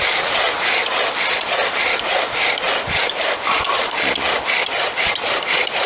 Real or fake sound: real